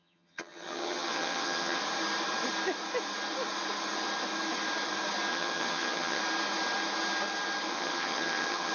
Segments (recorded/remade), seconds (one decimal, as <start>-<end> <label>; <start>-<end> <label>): 0.0-1.8 remade; 1.8-5.3 recorded; 5.3-6.2 remade; 6.2-7.7 recorded; 7.7-8.7 remade